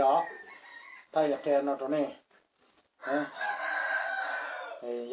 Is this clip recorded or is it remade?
recorded